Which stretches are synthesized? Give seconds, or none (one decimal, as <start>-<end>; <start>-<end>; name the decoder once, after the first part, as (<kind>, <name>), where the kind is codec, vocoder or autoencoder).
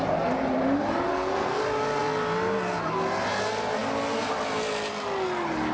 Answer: 1.1-1.6 (codec, SNAC)